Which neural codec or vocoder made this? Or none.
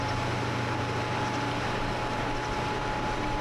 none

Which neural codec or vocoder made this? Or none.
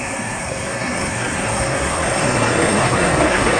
codec, SNAC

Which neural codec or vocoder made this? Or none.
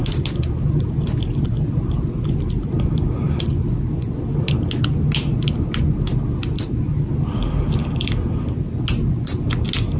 none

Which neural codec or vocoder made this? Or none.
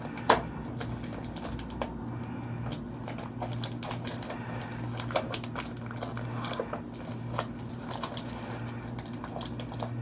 none